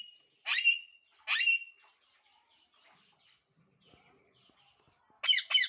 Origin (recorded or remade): recorded